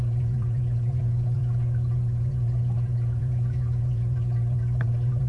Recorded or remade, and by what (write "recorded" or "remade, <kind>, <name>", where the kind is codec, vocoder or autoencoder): remade, vocoder, Vocos